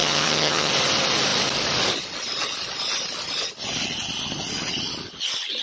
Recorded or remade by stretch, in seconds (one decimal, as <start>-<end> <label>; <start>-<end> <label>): 0.0-0.7 remade; 0.7-5.6 recorded